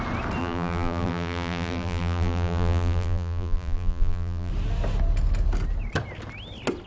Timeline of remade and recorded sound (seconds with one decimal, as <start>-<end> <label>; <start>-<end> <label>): 0.0-0.4 recorded; 0.4-4.5 remade; 4.5-6.9 recorded